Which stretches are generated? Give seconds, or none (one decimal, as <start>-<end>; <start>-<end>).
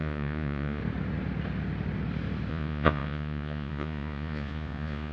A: 0.0-0.8; 2.5-5.1